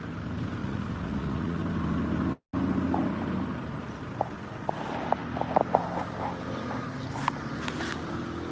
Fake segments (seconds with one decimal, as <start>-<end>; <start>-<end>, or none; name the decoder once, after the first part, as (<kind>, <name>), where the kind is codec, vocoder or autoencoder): 0.6-1.6 (vocoder, Vocos)